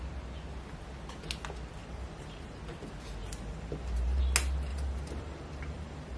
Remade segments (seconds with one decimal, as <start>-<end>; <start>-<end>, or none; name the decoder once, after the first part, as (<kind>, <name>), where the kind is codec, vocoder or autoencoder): 1.8-2.6 (vocoder, BigVGAN v2); 3.2-4.2; 4.7-6.2